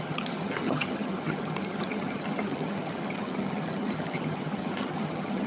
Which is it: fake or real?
fake